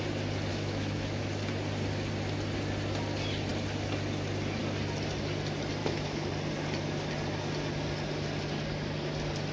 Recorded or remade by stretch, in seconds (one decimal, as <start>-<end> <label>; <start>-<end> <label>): 0.0-0.5 recorded; 0.5-1.2 remade; 1.2-5.8 recorded; 5.8-6.3 remade; 6.3-9.5 recorded